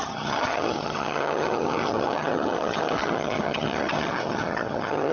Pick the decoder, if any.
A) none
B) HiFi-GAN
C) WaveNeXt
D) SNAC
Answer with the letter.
B